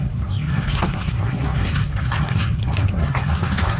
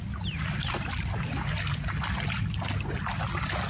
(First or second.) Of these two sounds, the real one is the second